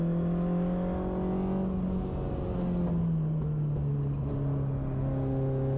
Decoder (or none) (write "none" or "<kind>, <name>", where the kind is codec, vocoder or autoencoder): none